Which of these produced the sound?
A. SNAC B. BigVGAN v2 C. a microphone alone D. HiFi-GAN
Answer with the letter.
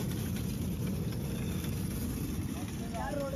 C